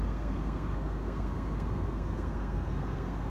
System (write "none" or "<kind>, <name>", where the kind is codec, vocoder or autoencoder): codec, SNAC